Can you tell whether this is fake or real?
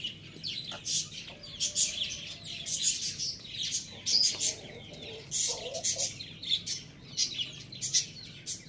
real